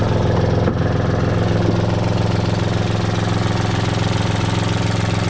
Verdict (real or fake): real